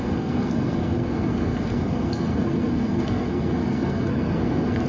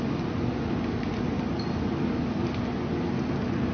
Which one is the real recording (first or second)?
second